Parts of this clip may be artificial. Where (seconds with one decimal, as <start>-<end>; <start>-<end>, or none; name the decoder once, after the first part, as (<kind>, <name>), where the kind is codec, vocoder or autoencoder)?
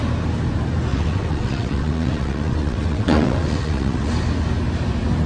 0.9-4.1 (vocoder, WaveNeXt)